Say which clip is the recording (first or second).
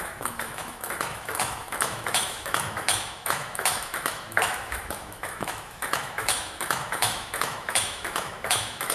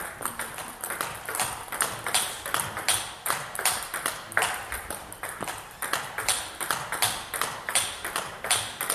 second